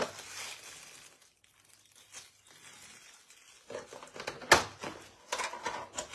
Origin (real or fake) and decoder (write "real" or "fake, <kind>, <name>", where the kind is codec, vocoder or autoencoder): real